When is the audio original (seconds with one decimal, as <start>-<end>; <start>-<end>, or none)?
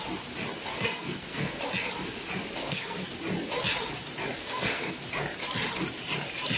0.0-0.7; 1.6-2.6; 3.1-4.4; 5.0-6.6